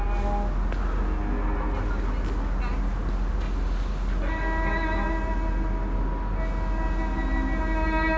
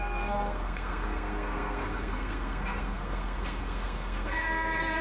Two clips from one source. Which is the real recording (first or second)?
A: first